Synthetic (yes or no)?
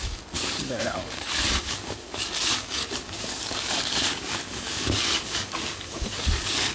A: yes